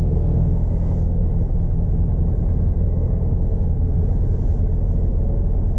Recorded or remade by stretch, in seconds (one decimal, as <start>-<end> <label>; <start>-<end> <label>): 0.0-1.2 remade; 1.2-2.8 recorded; 2.8-4.0 remade; 4.0-5.8 recorded